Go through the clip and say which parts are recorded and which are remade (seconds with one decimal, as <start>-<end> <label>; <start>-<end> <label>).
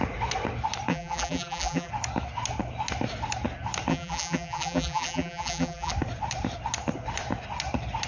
0.0-0.9 recorded; 0.9-1.9 remade; 1.9-3.9 recorded; 3.9-5.9 remade; 5.9-8.1 recorded